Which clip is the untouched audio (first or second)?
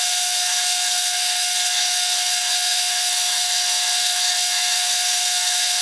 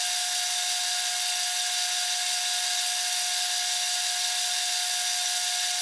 second